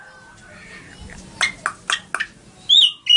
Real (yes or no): yes